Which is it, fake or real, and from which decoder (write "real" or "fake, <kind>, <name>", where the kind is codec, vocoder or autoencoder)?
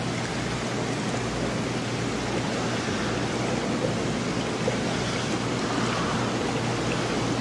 real